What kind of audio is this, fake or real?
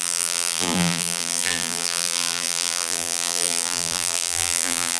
fake